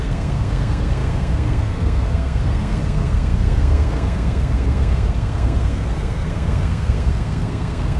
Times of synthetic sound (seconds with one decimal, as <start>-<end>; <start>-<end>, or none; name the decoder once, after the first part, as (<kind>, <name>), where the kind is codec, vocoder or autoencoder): 0.0-8.0 (codec, SNAC)